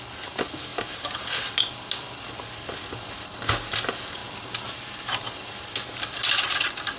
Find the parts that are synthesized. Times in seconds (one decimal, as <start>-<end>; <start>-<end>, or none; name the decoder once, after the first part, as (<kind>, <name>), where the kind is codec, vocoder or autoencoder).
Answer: 4.2-5.2 (vocoder, BigVGAN v2)

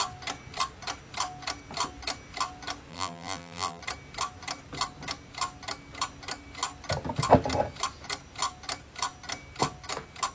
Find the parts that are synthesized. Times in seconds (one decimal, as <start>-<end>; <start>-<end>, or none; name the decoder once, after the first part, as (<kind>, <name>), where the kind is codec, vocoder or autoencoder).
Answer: 2.9-3.8 (vocoder, BigVGAN v2)

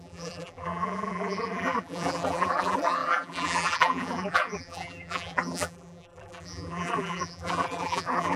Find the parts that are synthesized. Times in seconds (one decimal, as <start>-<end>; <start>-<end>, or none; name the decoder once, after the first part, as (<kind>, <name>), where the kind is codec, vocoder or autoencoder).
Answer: 0.0-8.4 (vocoder, BigVGAN v2)

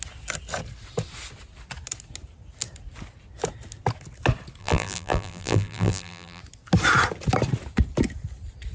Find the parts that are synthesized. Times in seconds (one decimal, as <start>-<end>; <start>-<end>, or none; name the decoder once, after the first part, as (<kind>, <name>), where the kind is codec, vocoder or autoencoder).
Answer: 4.6-6.4 (vocoder, BigVGAN v2)

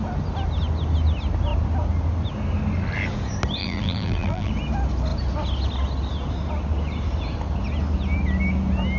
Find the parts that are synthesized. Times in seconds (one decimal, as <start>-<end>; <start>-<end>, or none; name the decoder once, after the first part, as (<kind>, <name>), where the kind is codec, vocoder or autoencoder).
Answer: 3.6-4.5 (vocoder, BigVGAN v2)

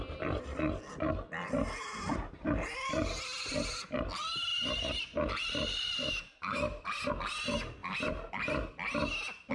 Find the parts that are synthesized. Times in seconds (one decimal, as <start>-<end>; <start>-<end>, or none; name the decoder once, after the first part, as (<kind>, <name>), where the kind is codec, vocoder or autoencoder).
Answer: 2.1-3.6 (vocoder, BigVGAN v2); 4.5-7.1

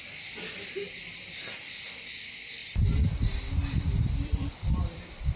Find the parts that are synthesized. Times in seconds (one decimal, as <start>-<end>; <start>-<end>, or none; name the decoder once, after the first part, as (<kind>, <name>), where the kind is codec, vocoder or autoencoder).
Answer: 2.6-5.4 (vocoder, BigVGAN v2)

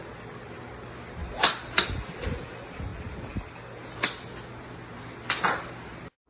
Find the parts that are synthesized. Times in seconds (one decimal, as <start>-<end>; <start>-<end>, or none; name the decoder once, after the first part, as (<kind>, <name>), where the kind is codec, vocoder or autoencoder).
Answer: 1.2-2.4 (vocoder, BigVGAN v2)